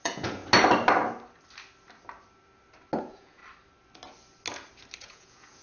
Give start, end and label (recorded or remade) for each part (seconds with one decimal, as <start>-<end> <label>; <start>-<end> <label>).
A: 0.0-0.4 remade; 0.4-3.0 recorded; 3.0-3.4 remade; 3.4-5.0 recorded; 5.0-5.6 remade